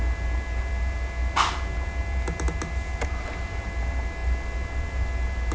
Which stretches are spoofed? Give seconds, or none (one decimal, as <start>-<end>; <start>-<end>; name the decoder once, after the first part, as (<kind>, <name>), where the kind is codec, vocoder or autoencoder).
none